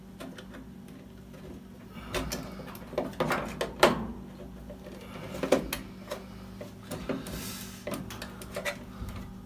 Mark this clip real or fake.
real